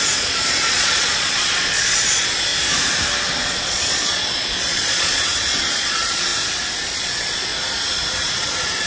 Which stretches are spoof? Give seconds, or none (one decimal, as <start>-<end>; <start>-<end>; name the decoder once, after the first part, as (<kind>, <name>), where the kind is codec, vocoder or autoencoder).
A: 0.0-2.5 (vocoder, Vocos); 3.3-6.3; 6.8-7.5; 8.2-8.9